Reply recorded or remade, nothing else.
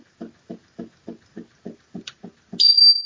recorded